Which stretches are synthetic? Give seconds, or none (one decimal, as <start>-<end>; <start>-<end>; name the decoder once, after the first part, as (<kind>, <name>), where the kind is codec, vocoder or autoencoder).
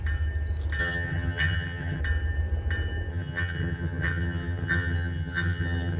0.8-2.0 (vocoder, HiFi-GAN); 3.1-6.0